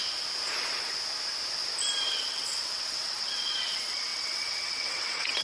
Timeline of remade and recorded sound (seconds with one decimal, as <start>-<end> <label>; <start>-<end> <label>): 0.0-2.1 recorded; 2.1-5.4 remade